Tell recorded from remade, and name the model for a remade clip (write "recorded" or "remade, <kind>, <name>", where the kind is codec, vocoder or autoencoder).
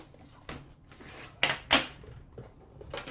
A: recorded